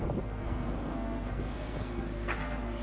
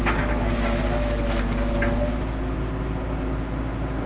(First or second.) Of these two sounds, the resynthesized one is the first